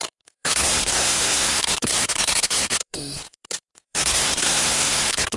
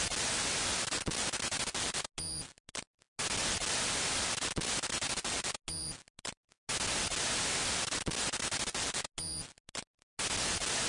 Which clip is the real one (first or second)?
second